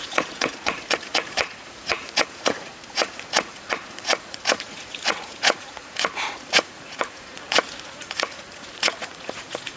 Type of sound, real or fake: fake